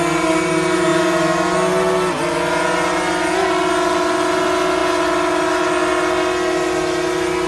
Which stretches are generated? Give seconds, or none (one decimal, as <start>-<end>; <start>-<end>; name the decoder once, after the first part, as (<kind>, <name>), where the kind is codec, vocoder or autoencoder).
none